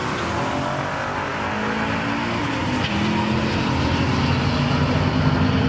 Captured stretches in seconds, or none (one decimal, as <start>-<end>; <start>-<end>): 0.0-5.7